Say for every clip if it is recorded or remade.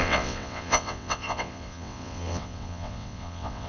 remade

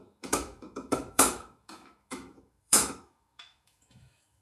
remade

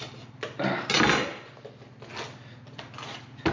recorded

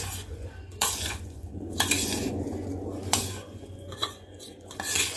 remade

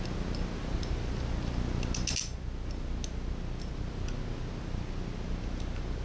recorded